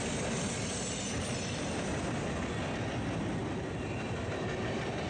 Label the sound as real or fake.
real